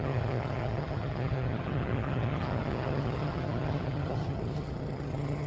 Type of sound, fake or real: fake